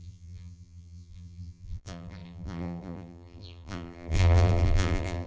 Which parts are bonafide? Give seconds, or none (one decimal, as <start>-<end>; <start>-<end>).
none